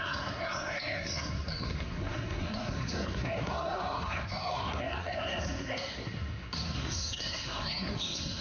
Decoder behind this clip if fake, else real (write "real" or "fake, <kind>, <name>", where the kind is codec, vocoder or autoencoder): fake, codec, SNAC